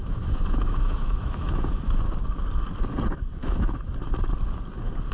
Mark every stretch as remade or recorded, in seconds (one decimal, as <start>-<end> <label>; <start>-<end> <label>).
0.0-1.9 remade; 1.9-3.4 recorded; 3.4-3.9 remade; 3.9-5.1 recorded